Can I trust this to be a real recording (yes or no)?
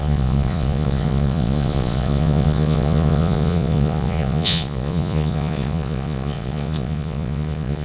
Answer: no